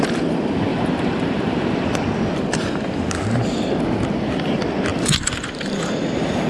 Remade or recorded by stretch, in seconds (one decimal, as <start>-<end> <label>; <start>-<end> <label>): 0.0-0.7 recorded; 0.7-1.9 remade; 1.9-4.9 recorded; 4.9-6.5 remade

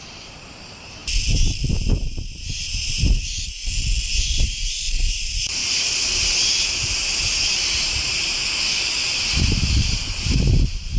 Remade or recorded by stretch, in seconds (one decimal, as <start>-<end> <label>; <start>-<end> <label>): 0.0-1.0 remade; 1.0-1.7 recorded; 1.7-3.6 remade; 3.6-4.1 recorded; 4.1-5.6 remade; 5.6-7.9 recorded; 7.9-8.4 remade; 8.4-9.2 recorded; 9.2-11.0 remade

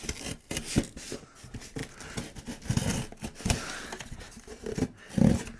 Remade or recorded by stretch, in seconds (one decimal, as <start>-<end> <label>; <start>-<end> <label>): 0.0-5.6 recorded